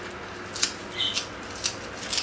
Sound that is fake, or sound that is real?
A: real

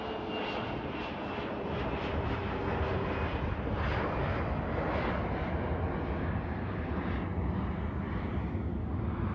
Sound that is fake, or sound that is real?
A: real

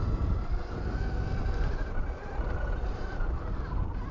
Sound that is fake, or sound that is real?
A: real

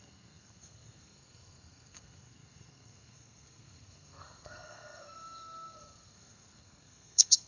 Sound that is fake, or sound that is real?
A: fake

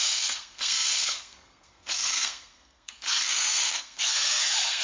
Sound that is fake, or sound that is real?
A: fake